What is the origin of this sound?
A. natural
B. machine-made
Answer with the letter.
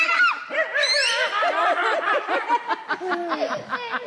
A